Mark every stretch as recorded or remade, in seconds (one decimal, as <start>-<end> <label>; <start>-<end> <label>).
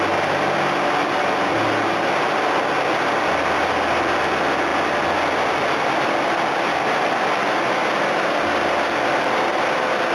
0.0-10.1 recorded